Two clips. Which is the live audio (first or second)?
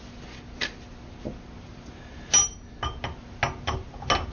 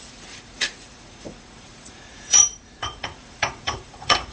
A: first